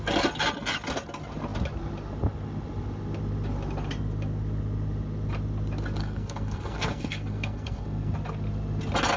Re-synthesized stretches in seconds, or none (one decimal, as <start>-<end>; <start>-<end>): 6.0-8.1